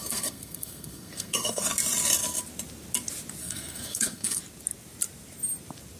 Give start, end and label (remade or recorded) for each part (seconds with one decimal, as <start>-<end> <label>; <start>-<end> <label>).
0.0-1.6 remade; 1.6-3.4 recorded; 3.4-4.4 remade; 4.4-6.0 recorded